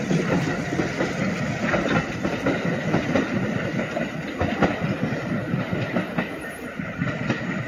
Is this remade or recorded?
recorded